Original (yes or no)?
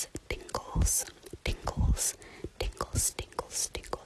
yes